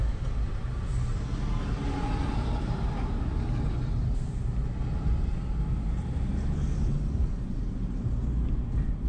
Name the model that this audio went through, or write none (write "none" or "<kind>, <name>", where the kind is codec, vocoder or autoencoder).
none